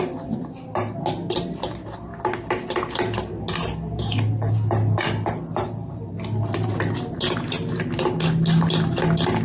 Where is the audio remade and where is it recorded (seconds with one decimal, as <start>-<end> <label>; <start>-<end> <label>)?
0.0-9.4 recorded